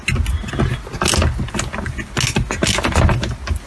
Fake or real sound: real